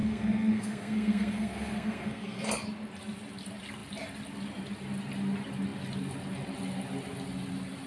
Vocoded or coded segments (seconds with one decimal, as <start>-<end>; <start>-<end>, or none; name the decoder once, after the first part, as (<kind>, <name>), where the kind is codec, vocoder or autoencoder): 0.0-2.5 (codec, SNAC)